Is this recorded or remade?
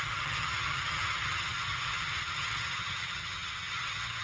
remade